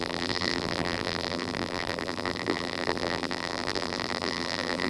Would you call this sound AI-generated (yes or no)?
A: yes